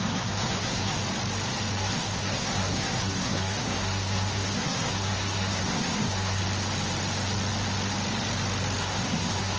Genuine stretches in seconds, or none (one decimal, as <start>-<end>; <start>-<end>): 1.0-1.8; 6.4-8.8